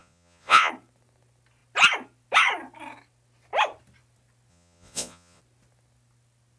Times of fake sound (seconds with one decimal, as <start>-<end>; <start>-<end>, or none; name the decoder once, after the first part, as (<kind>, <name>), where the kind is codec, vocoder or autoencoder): 0.0-0.7 (vocoder, Vocos); 4.5-5.4

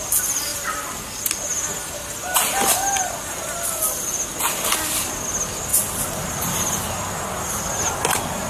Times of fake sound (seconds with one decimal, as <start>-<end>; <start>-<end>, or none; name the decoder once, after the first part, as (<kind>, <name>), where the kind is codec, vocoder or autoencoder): none

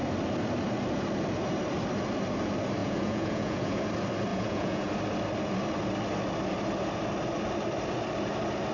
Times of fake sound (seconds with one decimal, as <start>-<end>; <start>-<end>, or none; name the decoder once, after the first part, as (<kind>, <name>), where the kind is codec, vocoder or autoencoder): 2.8-3.8 (vocoder, Vocos); 4.3-4.9

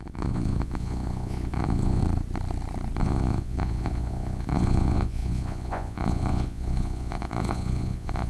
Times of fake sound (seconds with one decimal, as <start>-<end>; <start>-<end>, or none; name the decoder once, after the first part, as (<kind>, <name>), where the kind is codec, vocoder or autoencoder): 0.0-2.0 (vocoder, Vocos); 3.0-8.3

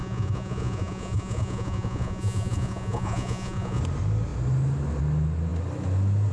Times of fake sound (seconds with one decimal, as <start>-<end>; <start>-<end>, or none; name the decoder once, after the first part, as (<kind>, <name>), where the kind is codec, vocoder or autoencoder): 0.0-3.8 (vocoder, Vocos)

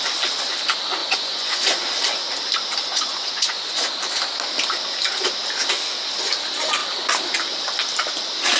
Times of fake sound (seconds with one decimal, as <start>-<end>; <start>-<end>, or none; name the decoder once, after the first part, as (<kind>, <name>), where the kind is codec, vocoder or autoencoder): 1.0-1.8 (vocoder, Vocos); 2.9-3.9

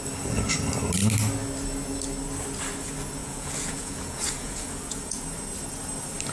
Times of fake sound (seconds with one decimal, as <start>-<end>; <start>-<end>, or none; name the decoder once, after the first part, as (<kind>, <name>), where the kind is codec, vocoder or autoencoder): 3.2-5.2 (vocoder, Vocos)

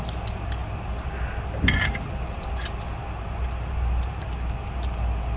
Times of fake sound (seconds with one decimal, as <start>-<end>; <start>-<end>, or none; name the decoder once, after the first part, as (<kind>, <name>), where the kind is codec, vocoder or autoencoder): none